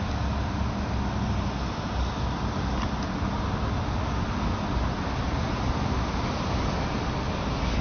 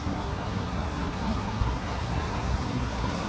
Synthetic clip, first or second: second